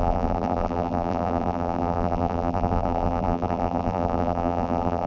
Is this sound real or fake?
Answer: fake